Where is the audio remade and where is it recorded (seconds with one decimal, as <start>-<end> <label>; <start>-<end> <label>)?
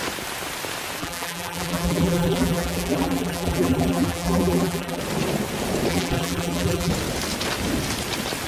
0.0-1.0 recorded; 1.0-5.0 remade; 5.0-5.9 recorded; 5.9-6.9 remade; 6.9-8.5 recorded